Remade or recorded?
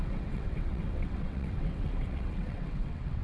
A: remade